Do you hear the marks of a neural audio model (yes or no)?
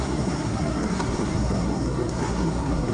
yes